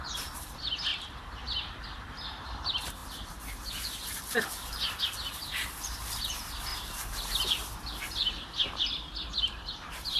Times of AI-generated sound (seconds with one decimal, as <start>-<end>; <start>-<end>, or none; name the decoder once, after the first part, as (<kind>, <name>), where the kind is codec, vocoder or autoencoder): 0.0-6.7 (vocoder, BigVGAN v2); 8.1-10.2